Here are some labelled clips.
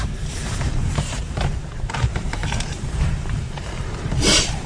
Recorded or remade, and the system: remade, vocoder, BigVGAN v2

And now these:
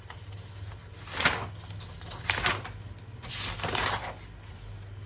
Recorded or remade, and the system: recorded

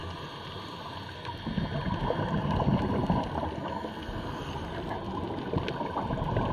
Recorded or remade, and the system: recorded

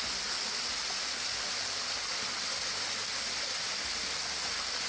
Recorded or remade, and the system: recorded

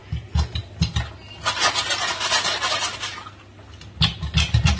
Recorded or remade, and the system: recorded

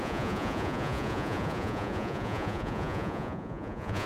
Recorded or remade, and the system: remade, vocoder, Vocos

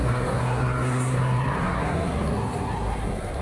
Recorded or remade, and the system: remade, codec, SNAC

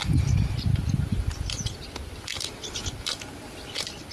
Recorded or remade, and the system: recorded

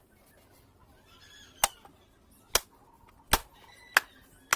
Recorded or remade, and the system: recorded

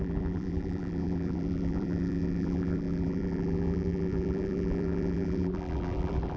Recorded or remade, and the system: remade, vocoder, BigVGAN v2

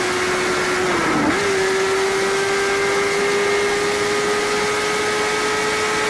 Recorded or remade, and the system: recorded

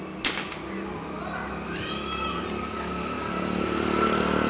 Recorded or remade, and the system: recorded